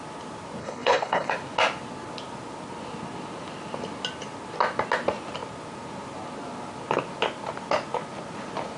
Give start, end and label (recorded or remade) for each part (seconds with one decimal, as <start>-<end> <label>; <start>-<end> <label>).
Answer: 0.0-0.6 recorded; 0.6-1.3 remade; 1.3-8.8 recorded